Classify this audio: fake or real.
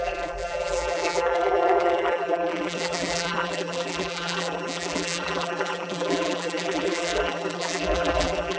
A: fake